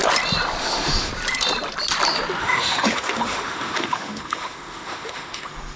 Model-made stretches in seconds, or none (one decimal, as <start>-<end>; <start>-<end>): 0.6-1.1; 2.4-5.8